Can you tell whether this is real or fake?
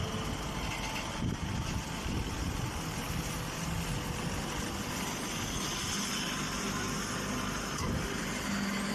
real